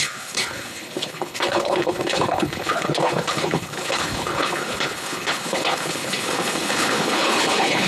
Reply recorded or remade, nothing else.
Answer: remade